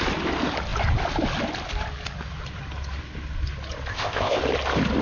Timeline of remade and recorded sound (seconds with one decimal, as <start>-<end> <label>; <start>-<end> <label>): 0.0-3.9 recorded; 3.9-4.4 remade; 4.4-5.0 recorded